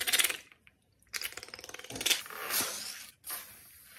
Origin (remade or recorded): recorded